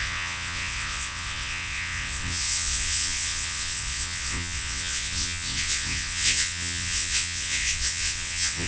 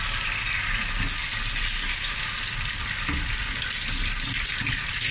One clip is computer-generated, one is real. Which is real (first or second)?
second